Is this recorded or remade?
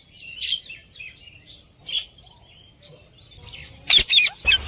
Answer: recorded